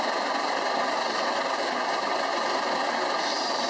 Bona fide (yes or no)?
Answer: yes